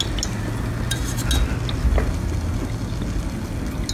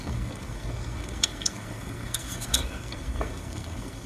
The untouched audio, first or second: first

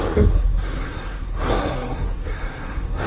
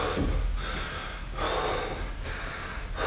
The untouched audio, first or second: second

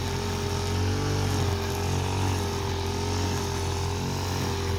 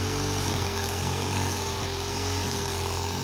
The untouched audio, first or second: first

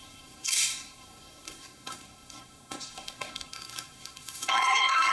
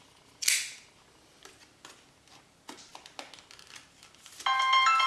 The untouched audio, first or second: second